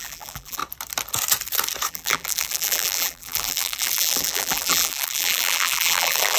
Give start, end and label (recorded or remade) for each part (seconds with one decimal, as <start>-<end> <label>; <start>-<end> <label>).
0.0-0.6 remade; 0.6-1.9 recorded; 1.9-6.4 remade